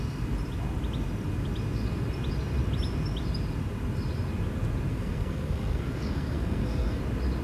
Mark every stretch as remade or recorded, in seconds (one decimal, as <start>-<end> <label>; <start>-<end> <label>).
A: 0.0-4.9 recorded; 4.9-7.0 remade; 7.0-7.4 recorded